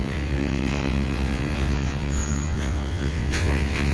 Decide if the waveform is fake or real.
fake